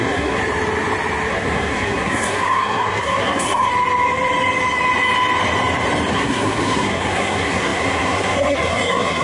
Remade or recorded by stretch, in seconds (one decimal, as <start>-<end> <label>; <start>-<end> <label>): 0.0-0.4 remade; 0.4-1.3 recorded; 1.3-3.7 remade; 3.7-6.1 recorded; 6.1-9.2 remade